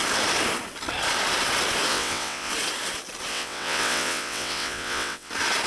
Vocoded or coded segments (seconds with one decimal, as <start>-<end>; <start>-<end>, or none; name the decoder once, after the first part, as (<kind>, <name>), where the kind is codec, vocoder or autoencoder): 1.9-2.5 (vocoder, WaveNeXt); 3.3-5.3